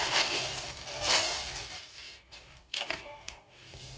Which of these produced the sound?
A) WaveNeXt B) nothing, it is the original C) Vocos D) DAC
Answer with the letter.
D